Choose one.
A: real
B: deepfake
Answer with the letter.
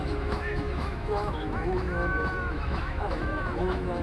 B